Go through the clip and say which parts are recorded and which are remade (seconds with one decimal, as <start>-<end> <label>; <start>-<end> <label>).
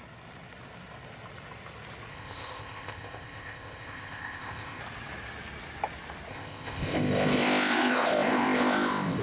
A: 0.0-2.1 recorded; 2.1-4.8 remade; 4.8-6.3 recorded; 6.3-9.2 remade